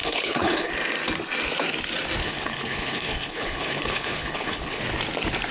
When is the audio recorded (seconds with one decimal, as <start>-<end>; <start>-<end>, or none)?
0.7-2.2; 4.8-5.5